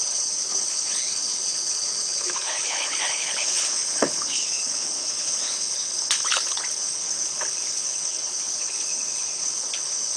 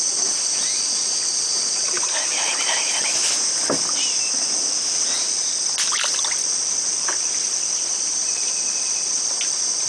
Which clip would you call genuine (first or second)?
second